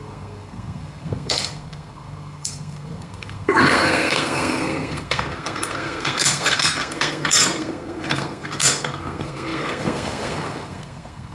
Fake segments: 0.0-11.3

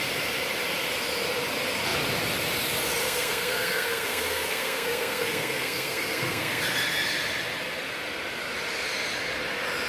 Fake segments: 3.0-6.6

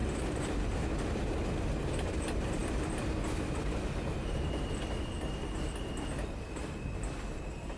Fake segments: none

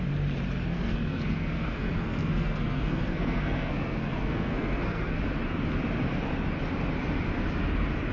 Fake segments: 0.7-5.2